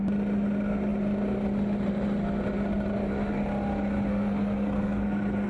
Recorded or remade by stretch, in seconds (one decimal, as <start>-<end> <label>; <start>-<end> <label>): 0.0-4.1 recorded; 4.1-5.5 remade